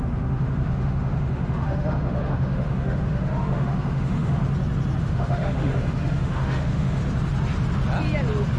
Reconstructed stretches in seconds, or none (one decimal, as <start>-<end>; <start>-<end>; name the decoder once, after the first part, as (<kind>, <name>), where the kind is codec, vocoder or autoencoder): 0.0-4.4 (autoencoder, DAC-VAE); 5.0-7.0